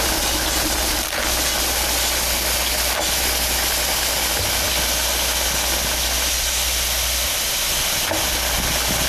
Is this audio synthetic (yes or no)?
no